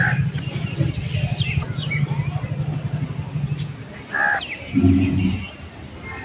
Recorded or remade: recorded